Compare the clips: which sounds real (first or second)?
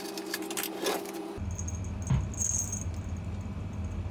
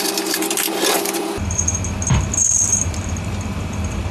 first